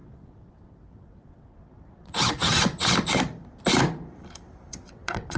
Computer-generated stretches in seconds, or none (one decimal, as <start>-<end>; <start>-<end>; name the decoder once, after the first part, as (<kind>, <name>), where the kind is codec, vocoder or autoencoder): 0.0-2.9 (vocoder, WaveNeXt); 4.7-5.4